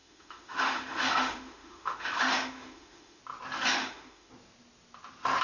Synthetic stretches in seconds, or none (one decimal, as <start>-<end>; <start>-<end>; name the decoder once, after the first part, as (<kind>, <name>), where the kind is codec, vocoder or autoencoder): 0.0-3.2 (autoencoder, DAC-VAE); 3.7-4.3